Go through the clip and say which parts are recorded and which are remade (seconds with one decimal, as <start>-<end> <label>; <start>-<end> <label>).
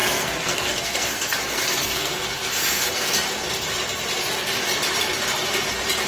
0.0-3.1 remade; 3.1-6.1 recorded